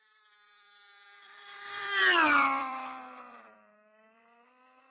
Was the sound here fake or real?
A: fake